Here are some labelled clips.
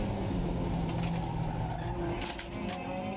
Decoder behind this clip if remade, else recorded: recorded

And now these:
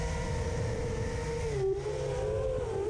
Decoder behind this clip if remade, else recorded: recorded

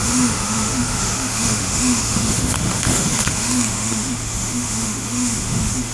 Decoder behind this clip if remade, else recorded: remade, autoencoder, DAC-VAE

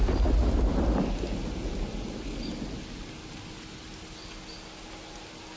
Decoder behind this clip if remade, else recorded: recorded